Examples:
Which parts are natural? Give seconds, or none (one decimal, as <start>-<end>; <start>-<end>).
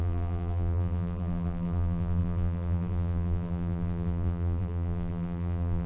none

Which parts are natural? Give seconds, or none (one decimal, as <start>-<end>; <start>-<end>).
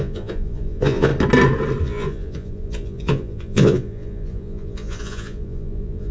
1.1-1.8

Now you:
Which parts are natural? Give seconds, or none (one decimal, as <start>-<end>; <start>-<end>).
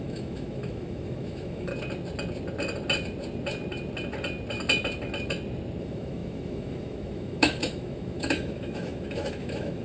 1.7-5.8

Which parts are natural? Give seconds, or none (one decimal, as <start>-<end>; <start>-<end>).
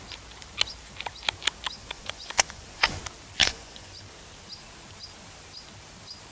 0.0-1.8; 3.0-3.4; 4.0-6.3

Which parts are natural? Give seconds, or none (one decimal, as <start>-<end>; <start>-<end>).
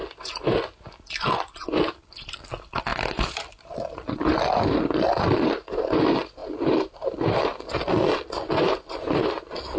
0.0-2.3; 6.4-8.6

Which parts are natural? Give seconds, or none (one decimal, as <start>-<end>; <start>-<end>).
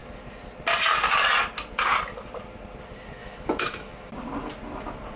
0.0-3.2; 4.1-5.2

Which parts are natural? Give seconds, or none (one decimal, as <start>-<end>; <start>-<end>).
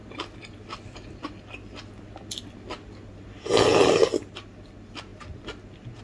0.0-6.0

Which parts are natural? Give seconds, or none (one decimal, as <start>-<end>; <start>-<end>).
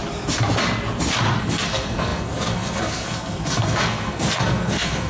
0.0-1.4